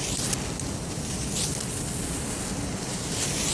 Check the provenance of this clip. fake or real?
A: real